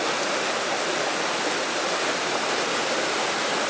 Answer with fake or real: fake